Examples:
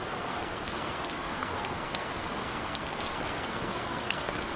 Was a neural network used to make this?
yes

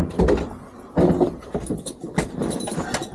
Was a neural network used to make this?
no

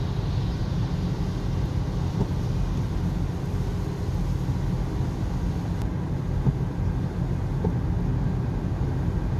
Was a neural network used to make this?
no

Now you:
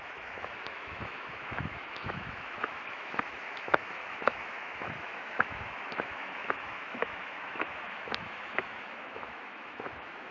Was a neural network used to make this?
yes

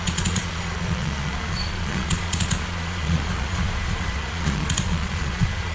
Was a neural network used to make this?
yes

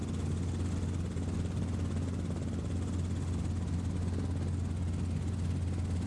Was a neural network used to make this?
no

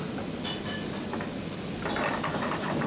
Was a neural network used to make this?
no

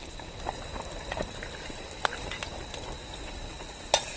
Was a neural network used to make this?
no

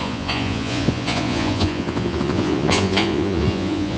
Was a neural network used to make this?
yes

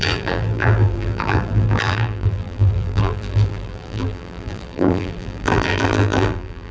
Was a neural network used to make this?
yes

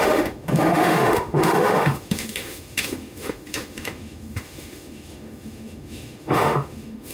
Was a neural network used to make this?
yes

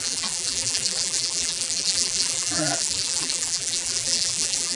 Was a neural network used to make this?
yes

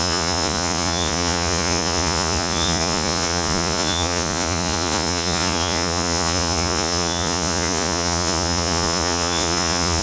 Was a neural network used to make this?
yes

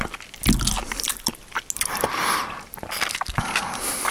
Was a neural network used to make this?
no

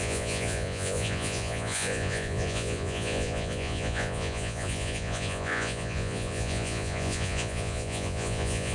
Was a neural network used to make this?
yes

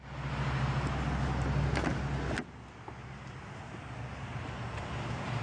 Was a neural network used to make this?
no